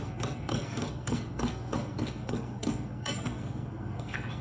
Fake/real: fake